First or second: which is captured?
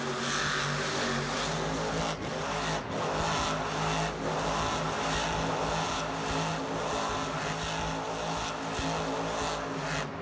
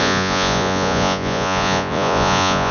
first